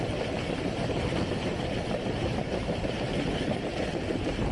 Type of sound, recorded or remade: remade